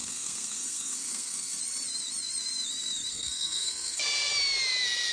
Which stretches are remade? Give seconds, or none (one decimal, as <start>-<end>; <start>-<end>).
0.0-1.6; 3.1-4.3